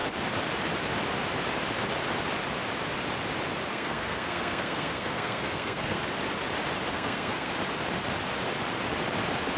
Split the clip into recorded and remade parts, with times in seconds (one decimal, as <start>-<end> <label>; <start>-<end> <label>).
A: 0.0-3.7 recorded; 3.7-6.0 remade; 6.0-6.9 recorded; 6.9-7.5 remade; 7.5-9.6 recorded